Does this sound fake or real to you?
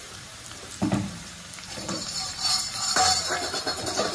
fake